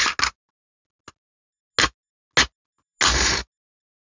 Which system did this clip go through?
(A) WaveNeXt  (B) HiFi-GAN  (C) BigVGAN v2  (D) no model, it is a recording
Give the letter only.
D